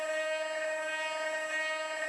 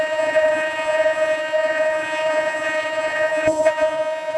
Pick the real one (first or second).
first